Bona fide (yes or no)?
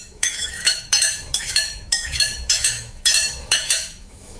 no